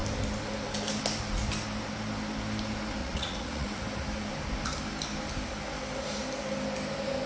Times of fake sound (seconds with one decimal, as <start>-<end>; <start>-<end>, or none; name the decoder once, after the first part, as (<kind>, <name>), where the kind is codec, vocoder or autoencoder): 3.0-3.8 (vocoder, Vocos)